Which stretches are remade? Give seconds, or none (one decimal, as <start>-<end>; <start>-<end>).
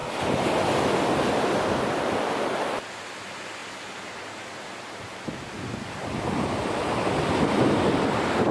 none